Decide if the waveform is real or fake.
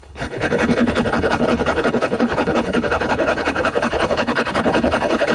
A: fake